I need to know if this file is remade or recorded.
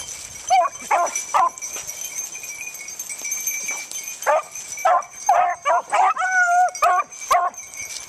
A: recorded